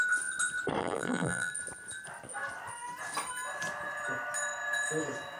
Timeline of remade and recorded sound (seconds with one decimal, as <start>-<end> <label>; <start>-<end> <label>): 0.0-0.8 recorded; 0.8-1.5 remade; 1.5-5.4 recorded